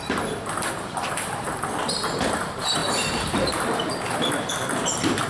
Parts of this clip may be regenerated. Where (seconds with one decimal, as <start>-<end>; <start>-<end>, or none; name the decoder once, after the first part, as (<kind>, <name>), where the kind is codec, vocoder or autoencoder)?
0.0-5.3 (vocoder, BigVGAN v2)